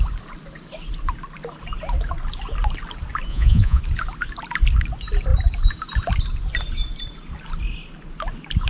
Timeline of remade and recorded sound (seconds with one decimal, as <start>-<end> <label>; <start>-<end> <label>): 0.0-3.3 recorded; 3.3-3.8 remade; 3.8-8.7 recorded